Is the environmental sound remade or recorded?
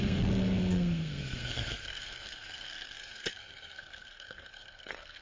remade